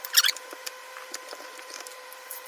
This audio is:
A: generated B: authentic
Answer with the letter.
A